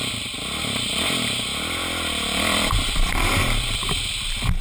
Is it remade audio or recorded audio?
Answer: remade